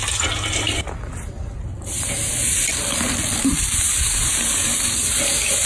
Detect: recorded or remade recorded